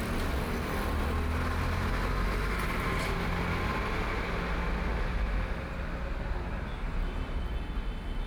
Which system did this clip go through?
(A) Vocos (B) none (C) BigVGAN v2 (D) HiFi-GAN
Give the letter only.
B